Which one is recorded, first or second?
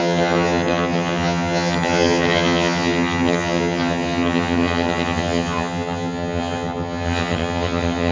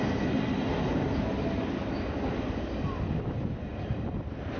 second